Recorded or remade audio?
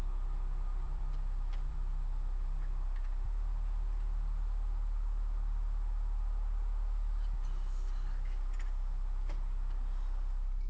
remade